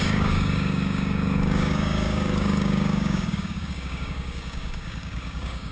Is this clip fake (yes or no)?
yes